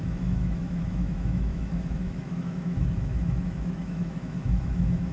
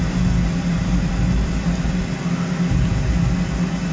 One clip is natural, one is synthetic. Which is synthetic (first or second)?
first